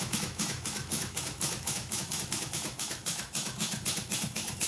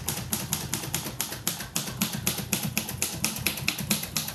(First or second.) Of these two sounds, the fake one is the first